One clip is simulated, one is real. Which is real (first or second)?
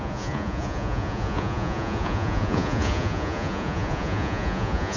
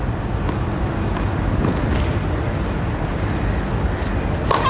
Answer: second